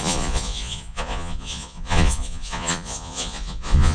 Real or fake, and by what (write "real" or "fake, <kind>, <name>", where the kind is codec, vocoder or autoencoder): fake, vocoder, Vocos